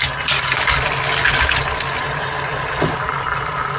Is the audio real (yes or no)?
yes